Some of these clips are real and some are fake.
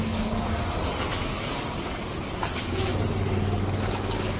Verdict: fake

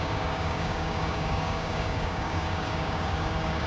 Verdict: fake